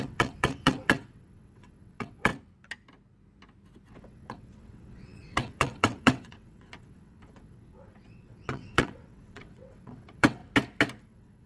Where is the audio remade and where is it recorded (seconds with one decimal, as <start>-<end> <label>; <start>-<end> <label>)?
0.0-2.3 remade; 2.3-3.9 recorded; 3.9-10.4 remade; 10.4-11.0 recorded; 11.0-11.5 remade